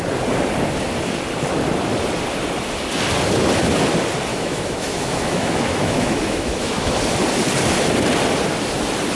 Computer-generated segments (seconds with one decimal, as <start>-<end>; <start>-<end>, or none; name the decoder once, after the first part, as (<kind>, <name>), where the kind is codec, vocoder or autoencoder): 4.3-6.9 (autoencoder, DAC-VAE)